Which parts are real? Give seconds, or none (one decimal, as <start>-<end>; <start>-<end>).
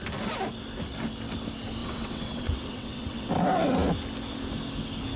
0.0-1.8; 3.3-5.2